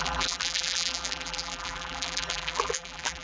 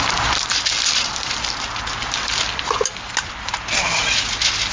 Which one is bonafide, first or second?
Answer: second